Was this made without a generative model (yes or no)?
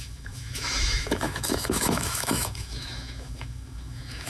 no